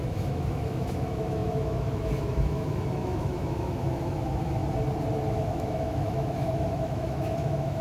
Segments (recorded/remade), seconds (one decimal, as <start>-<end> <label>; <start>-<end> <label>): 0.0-4.6 remade; 4.6-5.3 recorded; 5.3-7.8 remade